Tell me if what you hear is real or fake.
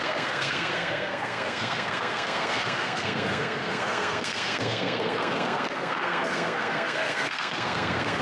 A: fake